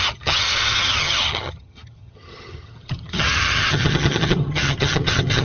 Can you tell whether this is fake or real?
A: fake